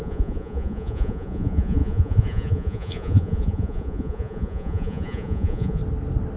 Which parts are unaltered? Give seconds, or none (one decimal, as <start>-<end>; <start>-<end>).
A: 5.8-6.4